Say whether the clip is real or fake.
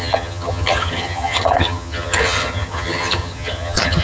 fake